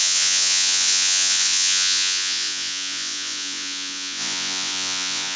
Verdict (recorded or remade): remade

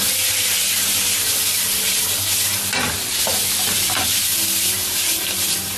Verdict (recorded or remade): recorded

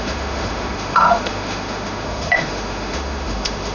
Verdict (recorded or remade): remade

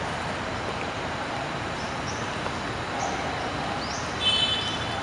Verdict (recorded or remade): recorded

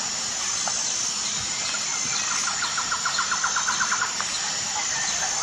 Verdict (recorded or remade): recorded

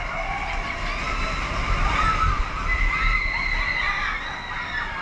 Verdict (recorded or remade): recorded